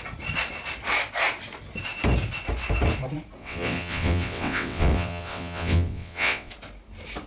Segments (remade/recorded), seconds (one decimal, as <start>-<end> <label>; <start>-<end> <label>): 0.0-3.4 recorded; 3.4-6.5 remade; 6.5-7.3 recorded